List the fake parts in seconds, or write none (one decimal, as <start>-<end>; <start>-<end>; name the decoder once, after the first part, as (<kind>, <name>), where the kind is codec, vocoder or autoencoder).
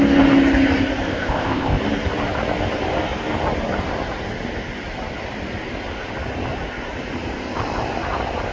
1.1-1.8 (codec, ZipCodec)